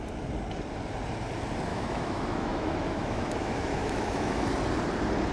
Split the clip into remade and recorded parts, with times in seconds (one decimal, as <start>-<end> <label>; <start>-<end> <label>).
0.0-1.7 recorded; 1.7-4.4 remade; 4.4-5.3 recorded